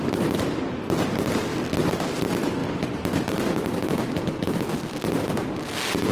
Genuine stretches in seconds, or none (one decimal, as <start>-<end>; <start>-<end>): 0.0-6.1